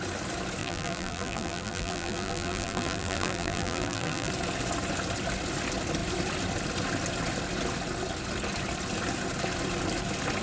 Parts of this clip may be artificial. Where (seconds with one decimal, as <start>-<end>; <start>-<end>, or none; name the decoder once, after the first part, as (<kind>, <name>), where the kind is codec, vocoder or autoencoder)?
0.6-4.3 (vocoder, BigVGAN v2)